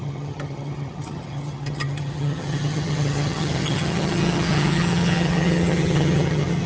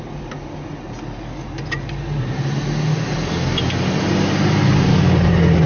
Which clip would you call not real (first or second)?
first